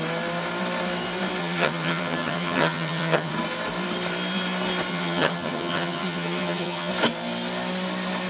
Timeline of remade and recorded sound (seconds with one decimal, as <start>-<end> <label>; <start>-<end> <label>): 0.0-1.4 recorded; 1.4-3.3 remade; 3.3-4.9 recorded; 4.9-6.9 remade; 6.9-8.3 recorded